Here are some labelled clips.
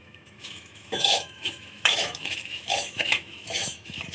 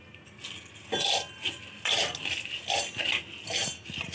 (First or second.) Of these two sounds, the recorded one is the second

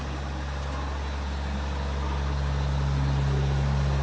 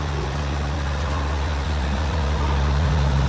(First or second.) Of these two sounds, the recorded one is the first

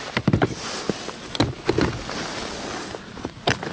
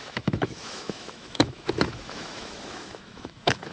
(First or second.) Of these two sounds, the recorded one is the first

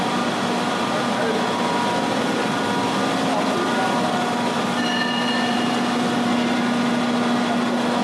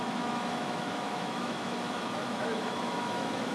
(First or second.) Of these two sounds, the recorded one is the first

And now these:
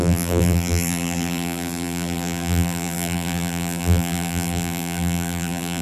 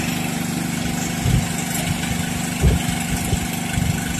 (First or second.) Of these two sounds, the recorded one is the second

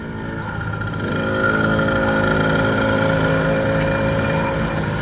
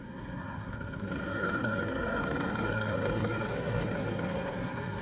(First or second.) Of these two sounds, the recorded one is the first